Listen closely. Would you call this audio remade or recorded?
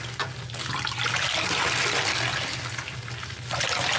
recorded